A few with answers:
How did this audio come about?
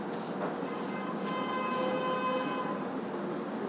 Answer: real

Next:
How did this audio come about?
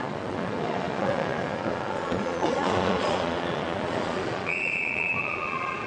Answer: fake